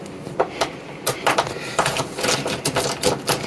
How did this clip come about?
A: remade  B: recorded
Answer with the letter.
B